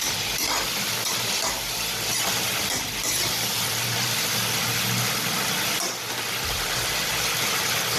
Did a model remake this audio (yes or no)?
no